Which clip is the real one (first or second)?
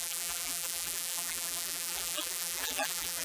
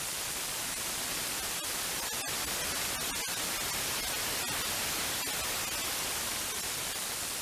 second